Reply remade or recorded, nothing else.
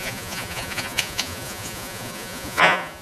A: remade